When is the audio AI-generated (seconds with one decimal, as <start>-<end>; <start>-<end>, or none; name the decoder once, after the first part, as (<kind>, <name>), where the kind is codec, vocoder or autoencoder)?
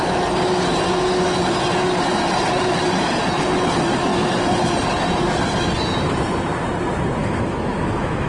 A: 7.2-8.3 (autoencoder, DAC-VAE)